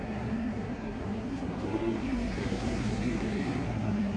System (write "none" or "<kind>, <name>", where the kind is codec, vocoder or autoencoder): codec, SNAC